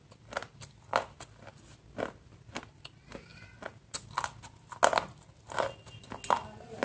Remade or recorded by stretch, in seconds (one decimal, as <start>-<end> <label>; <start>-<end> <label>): 0.0-6.8 recorded